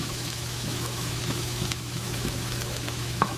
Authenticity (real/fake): fake